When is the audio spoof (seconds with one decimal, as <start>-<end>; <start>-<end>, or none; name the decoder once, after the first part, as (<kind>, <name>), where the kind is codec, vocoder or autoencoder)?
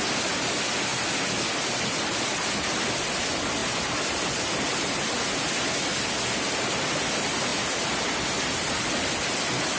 none